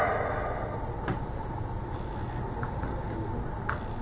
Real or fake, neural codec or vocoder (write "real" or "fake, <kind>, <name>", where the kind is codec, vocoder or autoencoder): real